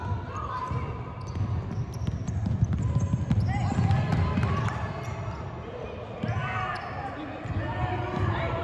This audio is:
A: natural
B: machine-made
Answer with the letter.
A